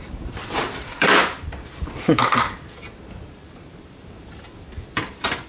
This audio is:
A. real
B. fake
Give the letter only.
B